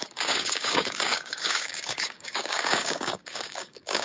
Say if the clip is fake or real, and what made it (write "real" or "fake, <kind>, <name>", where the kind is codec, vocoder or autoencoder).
fake, codec, DAC